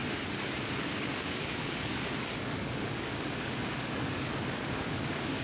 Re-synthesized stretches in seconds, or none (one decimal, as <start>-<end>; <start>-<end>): 0.0-5.4